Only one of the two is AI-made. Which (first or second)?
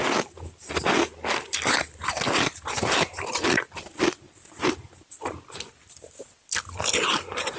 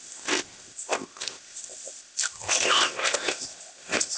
second